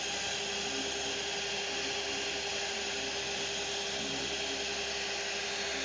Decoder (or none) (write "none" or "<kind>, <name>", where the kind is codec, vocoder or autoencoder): none